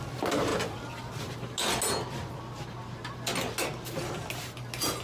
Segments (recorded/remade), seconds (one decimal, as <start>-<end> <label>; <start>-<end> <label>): 0.0-5.0 recorded